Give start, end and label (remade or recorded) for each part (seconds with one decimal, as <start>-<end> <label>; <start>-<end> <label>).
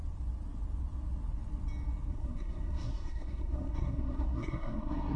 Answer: 0.0-2.1 recorded; 2.1-5.2 remade